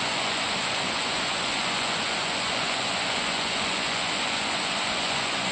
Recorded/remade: remade